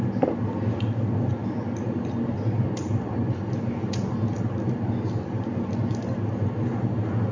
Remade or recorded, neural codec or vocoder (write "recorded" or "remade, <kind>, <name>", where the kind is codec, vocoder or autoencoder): recorded